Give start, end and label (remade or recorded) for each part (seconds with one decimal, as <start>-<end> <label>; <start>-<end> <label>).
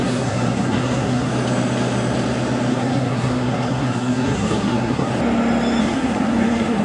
0.0-1.3 remade; 1.3-2.7 recorded; 2.7-5.1 remade; 5.1-5.8 recorded; 5.8-6.8 remade